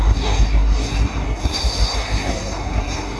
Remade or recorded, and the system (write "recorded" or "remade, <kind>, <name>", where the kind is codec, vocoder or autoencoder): remade, codec, SNAC